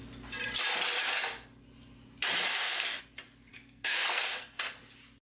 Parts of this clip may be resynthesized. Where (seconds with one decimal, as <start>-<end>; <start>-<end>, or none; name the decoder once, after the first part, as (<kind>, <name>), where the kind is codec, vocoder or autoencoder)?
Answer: 2.5-3.0 (codec, SNAC); 3.5-4.6